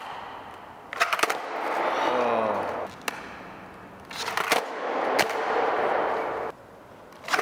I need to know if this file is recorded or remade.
recorded